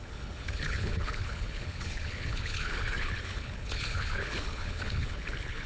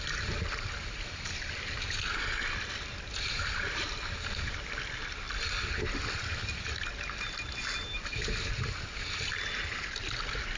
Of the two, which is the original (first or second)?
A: second